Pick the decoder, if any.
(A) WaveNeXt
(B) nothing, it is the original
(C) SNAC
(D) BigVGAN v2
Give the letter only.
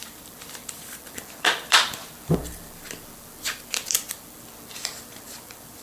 D